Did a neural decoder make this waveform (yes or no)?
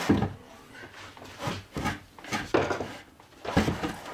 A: no